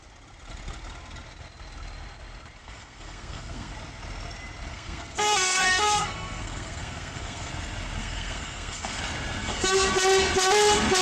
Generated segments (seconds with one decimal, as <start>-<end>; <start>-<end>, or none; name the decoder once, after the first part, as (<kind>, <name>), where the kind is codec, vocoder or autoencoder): 2.6-3.7 (codec, SNAC); 4.7-7.5; 8.0-9.0; 9.4-9.9